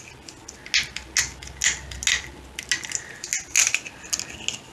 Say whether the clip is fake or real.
real